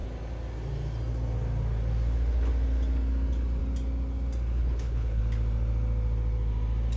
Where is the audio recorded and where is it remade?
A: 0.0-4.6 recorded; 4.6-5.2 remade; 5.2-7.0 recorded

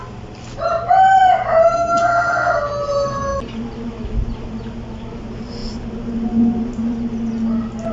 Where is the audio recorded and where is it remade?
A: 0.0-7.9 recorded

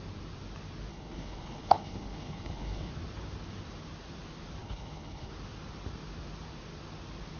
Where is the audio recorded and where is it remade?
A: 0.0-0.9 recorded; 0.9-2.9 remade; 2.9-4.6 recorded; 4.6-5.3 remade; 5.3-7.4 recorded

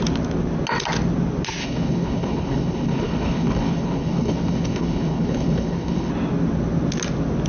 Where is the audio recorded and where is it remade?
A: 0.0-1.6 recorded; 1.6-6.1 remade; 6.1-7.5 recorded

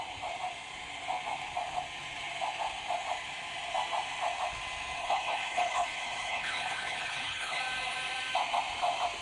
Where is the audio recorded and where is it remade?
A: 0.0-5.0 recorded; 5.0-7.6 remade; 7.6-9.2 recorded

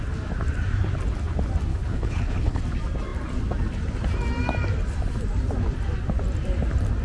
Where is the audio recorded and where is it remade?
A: 0.0-1.7 recorded; 1.7-2.6 remade; 2.6-7.0 recorded

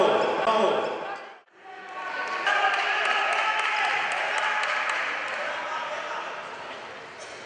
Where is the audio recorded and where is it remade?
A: 0.0-7.5 recorded